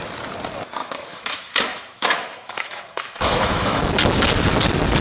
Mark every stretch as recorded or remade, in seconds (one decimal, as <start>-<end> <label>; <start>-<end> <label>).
0.0-0.8 recorded; 0.8-3.8 remade; 3.8-5.0 recorded